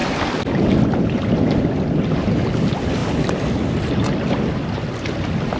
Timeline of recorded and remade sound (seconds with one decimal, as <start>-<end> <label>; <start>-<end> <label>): 0.0-5.6 recorded